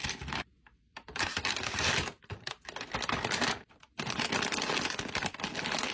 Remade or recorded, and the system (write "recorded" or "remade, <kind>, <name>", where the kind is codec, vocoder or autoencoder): recorded